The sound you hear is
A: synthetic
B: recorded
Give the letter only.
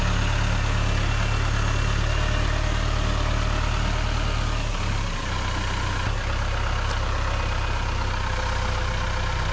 B